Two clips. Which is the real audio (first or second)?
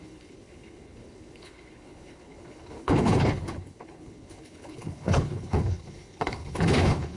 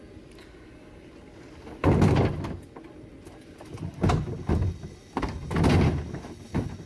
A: second